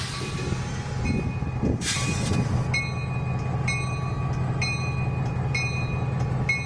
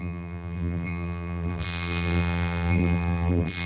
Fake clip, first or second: second